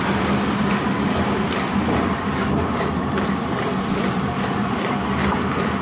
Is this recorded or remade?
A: remade